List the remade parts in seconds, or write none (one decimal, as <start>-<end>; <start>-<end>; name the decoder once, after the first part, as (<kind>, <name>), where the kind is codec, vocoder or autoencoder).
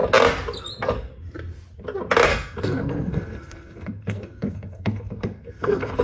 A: 2.3-6.0 (codec, SNAC)